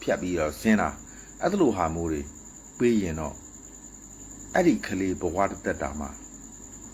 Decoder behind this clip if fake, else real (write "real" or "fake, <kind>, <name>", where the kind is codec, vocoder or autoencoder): real